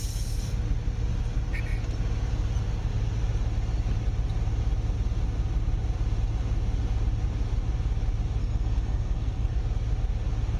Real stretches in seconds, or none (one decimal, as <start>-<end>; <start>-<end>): 0.0-8.4; 9.6-10.6